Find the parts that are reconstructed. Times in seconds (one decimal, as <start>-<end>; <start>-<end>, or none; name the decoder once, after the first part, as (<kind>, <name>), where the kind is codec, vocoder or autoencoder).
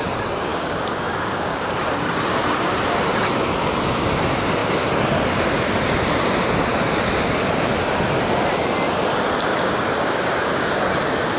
0.5-1.6 (codec, DAC); 9.5-10.8